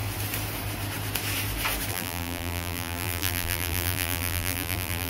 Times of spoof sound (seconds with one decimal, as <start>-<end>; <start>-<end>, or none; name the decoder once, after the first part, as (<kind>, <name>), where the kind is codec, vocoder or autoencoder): 1.9-5.1 (vocoder, BigVGAN v2)